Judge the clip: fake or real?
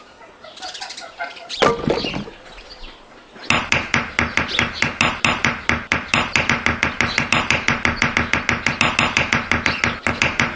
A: real